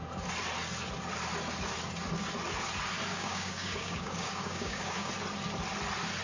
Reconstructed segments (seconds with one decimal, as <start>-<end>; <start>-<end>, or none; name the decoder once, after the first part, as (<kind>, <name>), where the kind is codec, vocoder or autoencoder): 3.1-5.1 (codec, DAC)